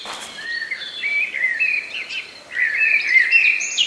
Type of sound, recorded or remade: remade